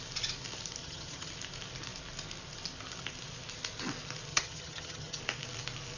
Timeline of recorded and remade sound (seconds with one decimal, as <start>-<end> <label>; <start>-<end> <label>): 0.0-0.8 recorded; 0.8-1.3 remade; 1.3-4.3 recorded; 4.3-5.2 remade; 5.2-6.0 recorded